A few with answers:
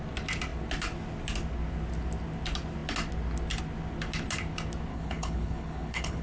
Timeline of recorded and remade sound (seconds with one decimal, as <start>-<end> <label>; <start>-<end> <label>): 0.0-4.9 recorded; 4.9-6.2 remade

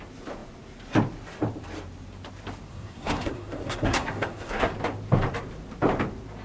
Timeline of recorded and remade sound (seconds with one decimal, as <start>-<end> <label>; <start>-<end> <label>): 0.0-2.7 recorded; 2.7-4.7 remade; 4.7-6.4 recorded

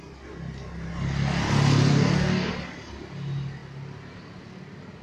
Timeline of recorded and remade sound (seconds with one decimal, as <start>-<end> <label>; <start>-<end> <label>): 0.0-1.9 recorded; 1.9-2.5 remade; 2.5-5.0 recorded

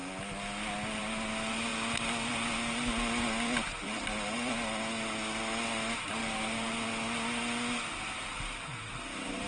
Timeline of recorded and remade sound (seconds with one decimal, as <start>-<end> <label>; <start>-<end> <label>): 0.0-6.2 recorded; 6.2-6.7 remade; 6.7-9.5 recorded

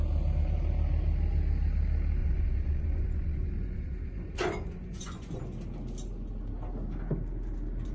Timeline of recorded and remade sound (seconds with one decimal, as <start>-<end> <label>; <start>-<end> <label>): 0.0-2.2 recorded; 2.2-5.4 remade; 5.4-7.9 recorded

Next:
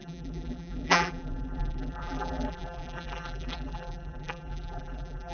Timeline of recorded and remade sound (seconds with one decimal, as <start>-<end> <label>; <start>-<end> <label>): 0.0-5.3 remade

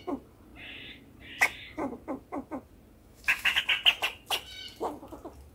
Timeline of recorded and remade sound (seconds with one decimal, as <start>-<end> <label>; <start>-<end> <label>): 0.0-3.0 recorded; 3.0-3.6 remade; 3.6-5.5 recorded

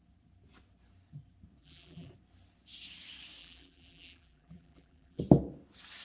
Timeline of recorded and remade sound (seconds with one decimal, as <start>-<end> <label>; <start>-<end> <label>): 0.0-1.6 recorded; 1.6-2.1 remade; 2.1-3.4 recorded; 3.4-5.2 remade; 5.2-6.0 recorded